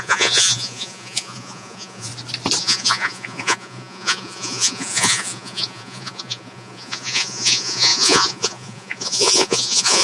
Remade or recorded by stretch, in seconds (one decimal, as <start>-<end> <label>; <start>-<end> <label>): 0.0-2.1 remade; 2.1-2.6 recorded; 2.6-10.0 remade